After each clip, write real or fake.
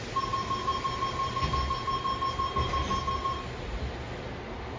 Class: real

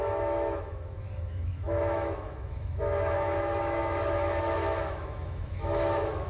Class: fake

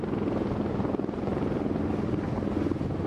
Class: real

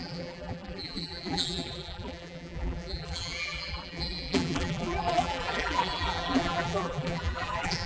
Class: fake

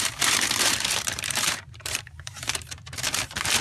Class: fake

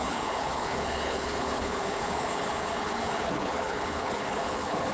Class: fake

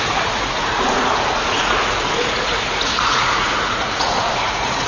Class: fake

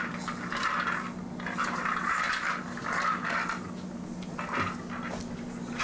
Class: real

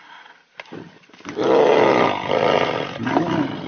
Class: real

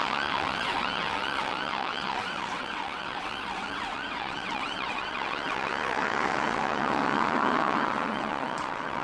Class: fake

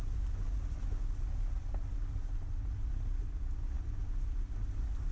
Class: real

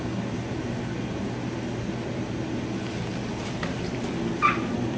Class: real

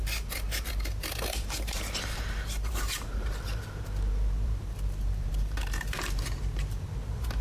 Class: fake